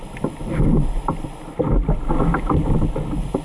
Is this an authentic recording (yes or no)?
yes